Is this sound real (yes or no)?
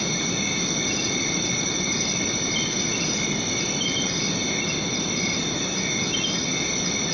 yes